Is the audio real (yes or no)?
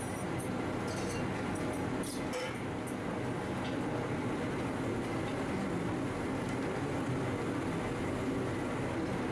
yes